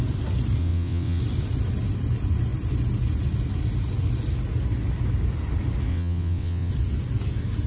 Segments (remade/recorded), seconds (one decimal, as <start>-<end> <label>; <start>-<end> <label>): 0.0-0.6 recorded; 0.6-1.2 remade; 1.2-5.9 recorded; 5.9-6.7 remade; 6.7-7.7 recorded